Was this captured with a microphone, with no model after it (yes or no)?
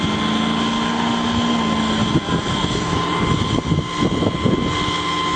yes